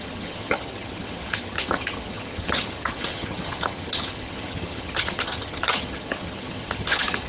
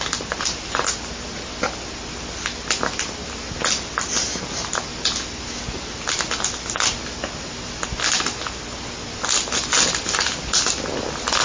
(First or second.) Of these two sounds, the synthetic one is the first